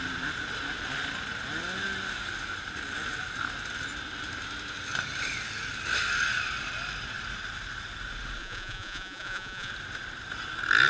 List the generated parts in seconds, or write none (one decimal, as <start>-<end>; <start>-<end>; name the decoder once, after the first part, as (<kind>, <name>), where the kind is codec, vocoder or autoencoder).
8.4-9.7 (vocoder, Vocos)